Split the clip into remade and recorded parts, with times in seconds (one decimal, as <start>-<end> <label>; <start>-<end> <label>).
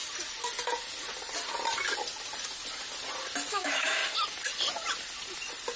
0.0-3.5 recorded; 3.5-4.0 remade; 4.0-5.8 recorded